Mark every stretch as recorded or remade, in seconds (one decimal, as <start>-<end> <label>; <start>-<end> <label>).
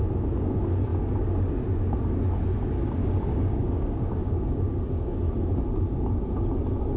0.0-3.0 recorded; 3.0-5.3 remade; 5.3-7.0 recorded